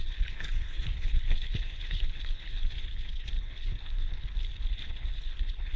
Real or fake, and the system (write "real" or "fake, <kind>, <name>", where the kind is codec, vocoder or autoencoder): fake, codec, HILCodec